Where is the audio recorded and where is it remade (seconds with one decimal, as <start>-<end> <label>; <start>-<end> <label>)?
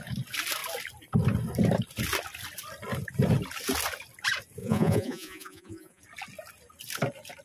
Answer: 0.0-4.6 recorded; 4.6-6.0 remade; 6.0-7.4 recorded